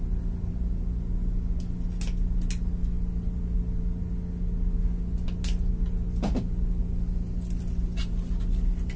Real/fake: real